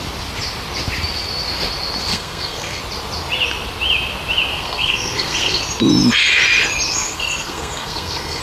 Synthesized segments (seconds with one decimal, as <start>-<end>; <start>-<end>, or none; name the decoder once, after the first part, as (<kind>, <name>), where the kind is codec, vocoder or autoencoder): 2.1-2.8 (codec, SNAC); 4.5-5.6; 6.9-8.4